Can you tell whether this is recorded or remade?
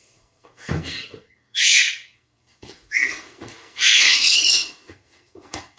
remade